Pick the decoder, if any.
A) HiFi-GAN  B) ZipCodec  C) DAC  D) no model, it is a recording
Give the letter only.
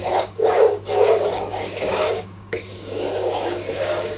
C